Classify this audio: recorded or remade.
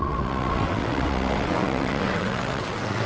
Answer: remade